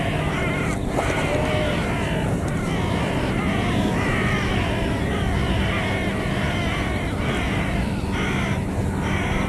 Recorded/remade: recorded